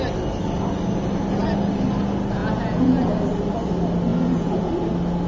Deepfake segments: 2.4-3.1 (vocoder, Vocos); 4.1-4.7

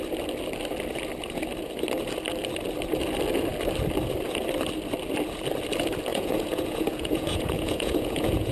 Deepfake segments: 6.1-8.5 (vocoder, Vocos)